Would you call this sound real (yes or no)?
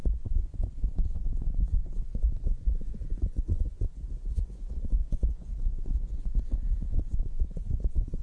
no